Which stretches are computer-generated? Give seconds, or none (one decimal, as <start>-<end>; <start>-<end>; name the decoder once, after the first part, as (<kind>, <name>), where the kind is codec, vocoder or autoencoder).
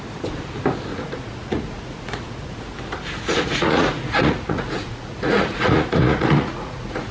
0.9-2.6 (vocoder, Vocos); 3.3-7.1